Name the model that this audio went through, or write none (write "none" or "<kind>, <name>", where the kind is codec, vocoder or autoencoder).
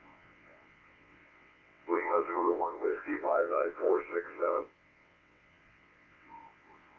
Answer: vocoder, WaveNeXt